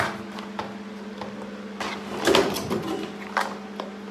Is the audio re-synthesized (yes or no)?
no